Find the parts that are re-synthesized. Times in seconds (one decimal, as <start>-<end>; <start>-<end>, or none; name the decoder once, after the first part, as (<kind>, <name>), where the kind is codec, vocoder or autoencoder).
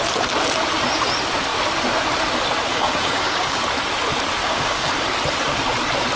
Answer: 2.7-3.6 (codec, DAC); 4.4-4.9